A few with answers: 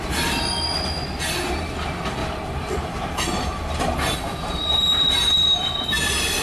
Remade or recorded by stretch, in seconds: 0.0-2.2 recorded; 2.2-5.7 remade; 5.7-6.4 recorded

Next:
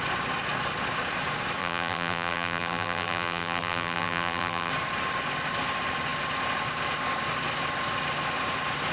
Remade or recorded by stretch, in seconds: 0.0-1.6 recorded; 1.6-4.7 remade; 4.7-8.9 recorded

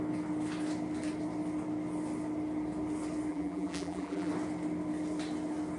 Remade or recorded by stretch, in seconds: 0.0-3.3 recorded; 3.3-4.3 remade; 4.3-5.8 recorded

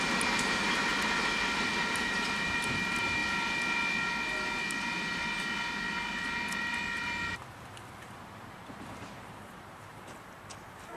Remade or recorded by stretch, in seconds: 0.0-0.9 remade; 0.9-1.6 recorded; 1.6-3.2 remade; 3.2-7.0 recorded; 7.0-7.4 remade; 7.4-8.0 recorded; 8.0-11.0 remade

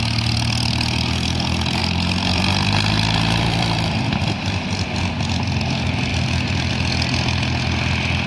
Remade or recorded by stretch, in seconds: 0.0-1.8 recorded; 1.8-5.0 remade; 5.0-6.1 recorded; 6.1-6.7 remade; 6.7-8.3 recorded

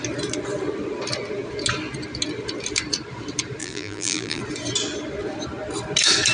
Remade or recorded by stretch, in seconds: 0.0-3.6 recorded; 3.6-4.4 remade; 4.4-6.3 recorded

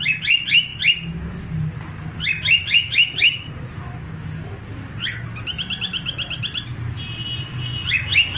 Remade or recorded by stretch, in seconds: 0.0-8.4 recorded